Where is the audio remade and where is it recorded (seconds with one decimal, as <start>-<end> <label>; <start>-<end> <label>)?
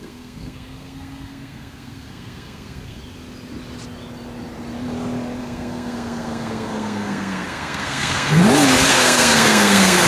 0.0-3.0 remade; 3.0-5.4 recorded; 5.4-8.4 remade; 8.4-8.9 recorded; 8.9-10.1 remade